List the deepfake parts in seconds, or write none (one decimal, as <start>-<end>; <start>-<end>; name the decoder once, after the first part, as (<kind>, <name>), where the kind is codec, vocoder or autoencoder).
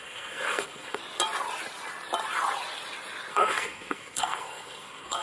0.0-1.0 (codec, SNAC); 3.3-5.2